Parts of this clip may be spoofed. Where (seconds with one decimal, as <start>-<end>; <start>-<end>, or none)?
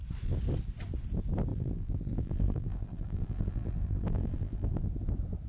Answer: 1.5-4.8